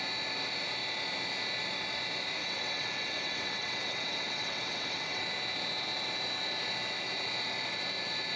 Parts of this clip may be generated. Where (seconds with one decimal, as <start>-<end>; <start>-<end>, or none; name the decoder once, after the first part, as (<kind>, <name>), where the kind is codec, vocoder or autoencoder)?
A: 2.4-5.2 (vocoder, WaveNeXt)